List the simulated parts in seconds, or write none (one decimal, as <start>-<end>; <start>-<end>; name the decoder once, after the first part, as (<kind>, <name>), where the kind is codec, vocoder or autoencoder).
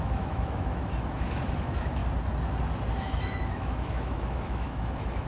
0.0-2.0 (autoencoder, DAC-VAE); 3.0-5.3